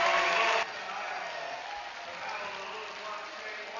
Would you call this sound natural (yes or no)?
yes